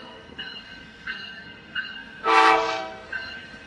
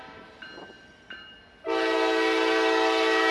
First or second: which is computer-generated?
first